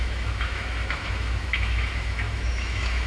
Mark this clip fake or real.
fake